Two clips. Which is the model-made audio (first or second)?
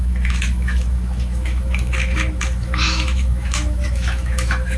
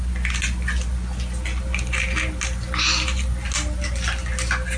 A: first